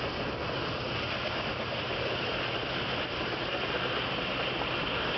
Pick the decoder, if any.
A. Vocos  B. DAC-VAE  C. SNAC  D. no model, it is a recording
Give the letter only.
D